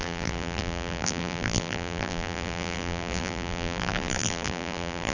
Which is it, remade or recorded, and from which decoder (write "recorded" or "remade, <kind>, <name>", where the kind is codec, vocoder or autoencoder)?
remade, vocoder, BigVGAN v2